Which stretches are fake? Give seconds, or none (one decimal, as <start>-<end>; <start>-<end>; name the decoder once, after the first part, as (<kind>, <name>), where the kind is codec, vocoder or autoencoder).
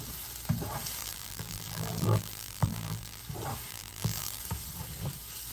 1.0-3.2 (vocoder, BigVGAN v2); 3.7-4.4